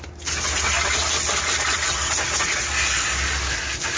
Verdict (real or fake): real